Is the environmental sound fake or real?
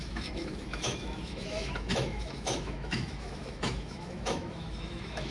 fake